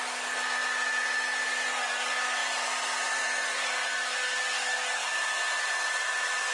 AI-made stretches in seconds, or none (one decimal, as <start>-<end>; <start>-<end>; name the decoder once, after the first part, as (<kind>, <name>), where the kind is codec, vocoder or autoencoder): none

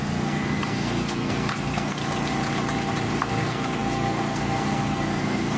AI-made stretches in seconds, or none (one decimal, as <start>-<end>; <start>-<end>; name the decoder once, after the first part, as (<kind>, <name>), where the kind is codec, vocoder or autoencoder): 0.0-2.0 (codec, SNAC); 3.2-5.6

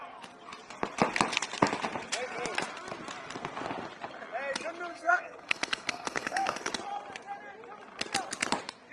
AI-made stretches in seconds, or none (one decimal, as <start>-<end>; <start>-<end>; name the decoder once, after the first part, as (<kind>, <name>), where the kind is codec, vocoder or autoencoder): 4.9-6.7 (codec, SNAC)

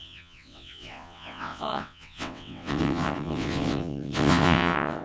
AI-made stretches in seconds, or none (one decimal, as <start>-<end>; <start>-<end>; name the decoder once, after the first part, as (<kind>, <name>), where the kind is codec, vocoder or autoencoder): 0.0-5.0 (vocoder, WaveNeXt)

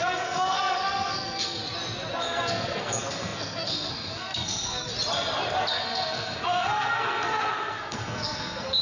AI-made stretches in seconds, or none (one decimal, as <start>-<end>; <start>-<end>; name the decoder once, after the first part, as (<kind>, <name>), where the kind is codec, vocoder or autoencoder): 0.0-1.6 (codec, SNAC); 2.2-4.9; 5.7-8.8

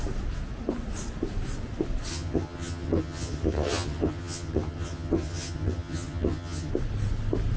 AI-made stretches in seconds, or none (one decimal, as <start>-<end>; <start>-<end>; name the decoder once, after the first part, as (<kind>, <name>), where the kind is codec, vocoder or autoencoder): 2.1-6.7 (vocoder, HiFi-GAN)

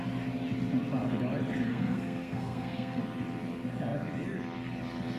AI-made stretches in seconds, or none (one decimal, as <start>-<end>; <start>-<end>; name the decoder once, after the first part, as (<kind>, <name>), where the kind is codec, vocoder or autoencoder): 1.7-3.0 (codec, SNAC)

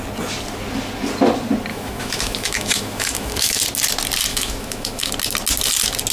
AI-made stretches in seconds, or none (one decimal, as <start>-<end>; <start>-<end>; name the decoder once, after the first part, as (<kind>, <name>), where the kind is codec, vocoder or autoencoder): 1.7-3.6 (autoencoder, DAC-VAE); 4.3-5.1